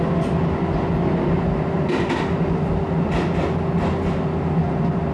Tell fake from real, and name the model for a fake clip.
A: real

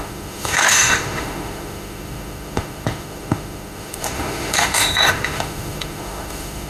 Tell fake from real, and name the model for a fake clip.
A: fake, autoencoder, DAC-VAE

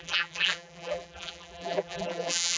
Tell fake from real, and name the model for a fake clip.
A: fake, vocoder, BigVGAN v2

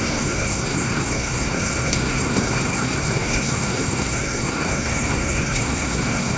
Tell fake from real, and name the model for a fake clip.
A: fake, codec, SNAC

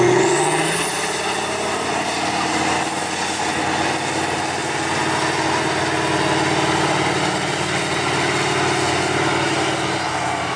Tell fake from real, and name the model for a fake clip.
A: real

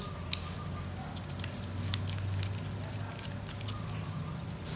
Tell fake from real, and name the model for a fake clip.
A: real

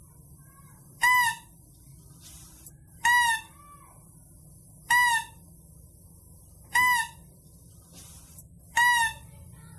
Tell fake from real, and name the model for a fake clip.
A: real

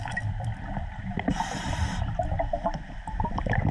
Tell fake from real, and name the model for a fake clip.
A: real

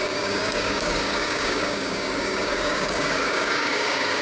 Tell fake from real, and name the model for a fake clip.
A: fake, codec, DAC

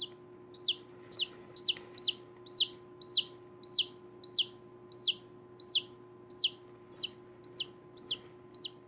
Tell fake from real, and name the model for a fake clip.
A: real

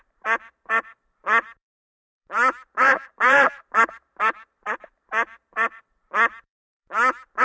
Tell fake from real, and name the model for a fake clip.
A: fake, vocoder, BigVGAN v2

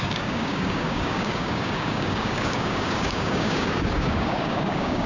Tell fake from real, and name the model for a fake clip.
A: fake, codec, DAC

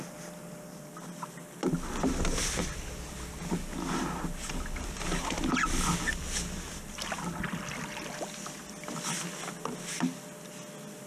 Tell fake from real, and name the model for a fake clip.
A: real